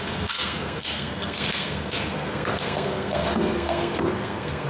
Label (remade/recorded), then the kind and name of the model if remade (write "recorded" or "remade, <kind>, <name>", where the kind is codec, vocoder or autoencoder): remade, codec, SNAC